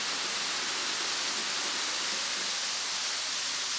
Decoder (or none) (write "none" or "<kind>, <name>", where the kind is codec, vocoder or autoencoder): none